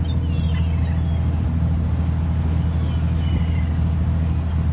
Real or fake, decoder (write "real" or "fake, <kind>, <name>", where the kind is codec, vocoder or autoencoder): real